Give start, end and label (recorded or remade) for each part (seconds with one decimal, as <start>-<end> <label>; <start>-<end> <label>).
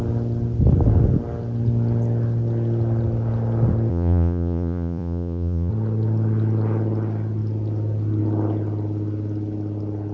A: 0.0-3.9 recorded; 3.9-5.7 remade; 5.7-10.1 recorded